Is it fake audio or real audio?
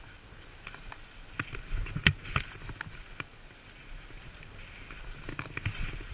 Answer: real